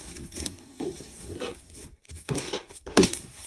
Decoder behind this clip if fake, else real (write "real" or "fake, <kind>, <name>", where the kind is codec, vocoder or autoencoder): fake, codec, SNAC